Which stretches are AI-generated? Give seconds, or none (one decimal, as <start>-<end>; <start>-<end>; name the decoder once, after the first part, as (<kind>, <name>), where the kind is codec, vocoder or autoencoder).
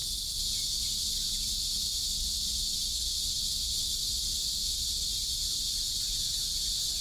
none